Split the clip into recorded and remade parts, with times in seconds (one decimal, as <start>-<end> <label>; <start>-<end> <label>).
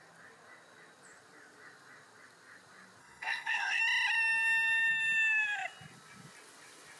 0.0-3.0 recorded; 3.0-3.8 remade; 3.8-7.0 recorded